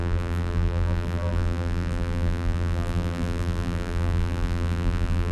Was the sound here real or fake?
fake